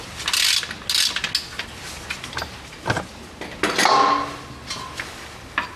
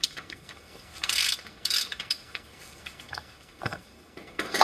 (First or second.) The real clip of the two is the first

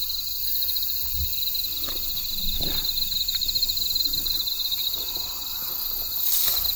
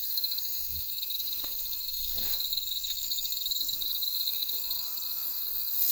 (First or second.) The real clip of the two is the first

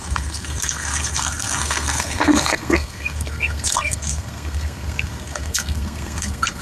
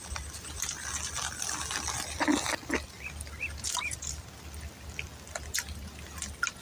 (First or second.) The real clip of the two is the second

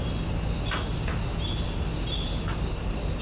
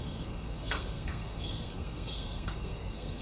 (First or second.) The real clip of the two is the first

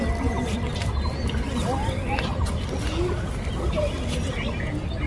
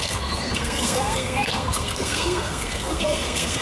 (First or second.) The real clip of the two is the first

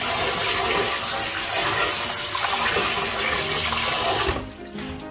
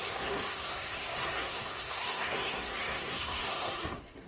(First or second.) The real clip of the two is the first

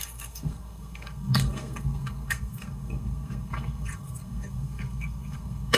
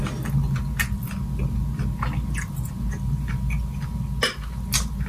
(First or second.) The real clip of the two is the second